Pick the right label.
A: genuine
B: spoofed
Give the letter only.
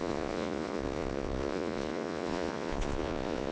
B